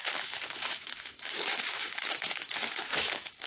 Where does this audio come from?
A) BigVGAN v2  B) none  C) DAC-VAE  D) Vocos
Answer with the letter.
C